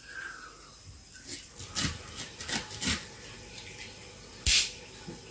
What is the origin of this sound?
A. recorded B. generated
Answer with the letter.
A